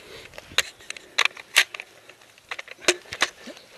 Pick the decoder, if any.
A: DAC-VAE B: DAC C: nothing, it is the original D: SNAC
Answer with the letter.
C